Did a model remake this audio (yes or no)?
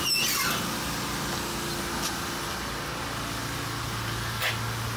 no